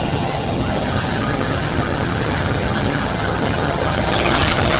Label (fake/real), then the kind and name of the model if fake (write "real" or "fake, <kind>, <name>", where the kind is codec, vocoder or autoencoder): fake, vocoder, HiFi-GAN